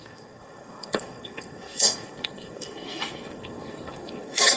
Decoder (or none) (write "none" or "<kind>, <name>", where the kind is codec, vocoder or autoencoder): codec, SNAC